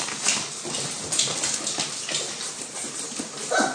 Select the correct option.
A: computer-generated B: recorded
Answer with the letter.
B